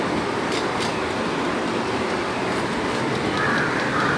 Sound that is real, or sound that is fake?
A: real